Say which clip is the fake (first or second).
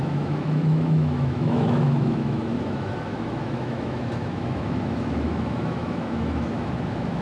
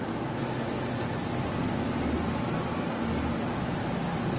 first